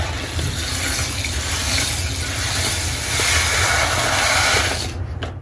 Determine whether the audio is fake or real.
real